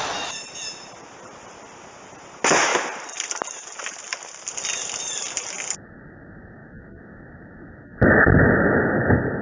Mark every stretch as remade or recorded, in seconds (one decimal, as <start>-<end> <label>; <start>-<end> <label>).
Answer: 0.0-9.4 recorded